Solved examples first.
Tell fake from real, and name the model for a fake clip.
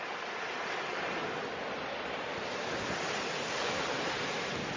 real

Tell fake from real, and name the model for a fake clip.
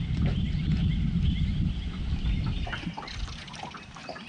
real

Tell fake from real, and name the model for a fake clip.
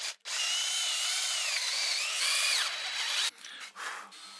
real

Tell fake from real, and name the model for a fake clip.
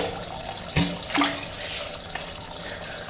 real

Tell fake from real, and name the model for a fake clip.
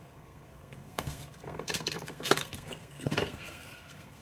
fake, codec, SNAC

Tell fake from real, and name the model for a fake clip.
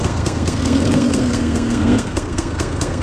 fake, codec, SNAC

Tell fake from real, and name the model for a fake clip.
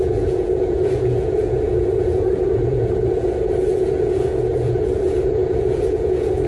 fake, vocoder, Vocos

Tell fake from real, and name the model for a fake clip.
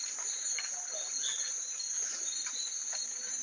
real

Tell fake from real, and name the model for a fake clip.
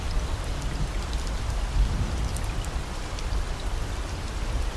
real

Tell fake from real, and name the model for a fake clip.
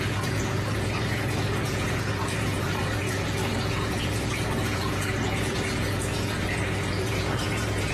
fake, vocoder, Vocos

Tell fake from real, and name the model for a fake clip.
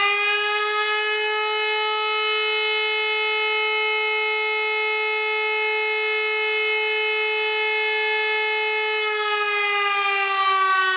real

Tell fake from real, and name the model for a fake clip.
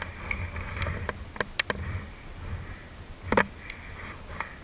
real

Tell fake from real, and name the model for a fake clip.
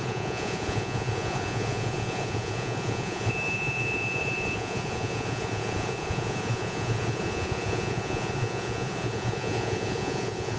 fake, vocoder, Vocos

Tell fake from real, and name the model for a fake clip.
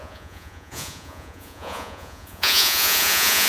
fake, vocoder, Vocos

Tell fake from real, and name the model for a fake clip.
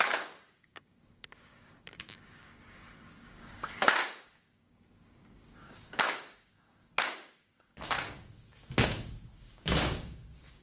fake, codec, DAC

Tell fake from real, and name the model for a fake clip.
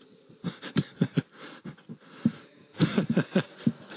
real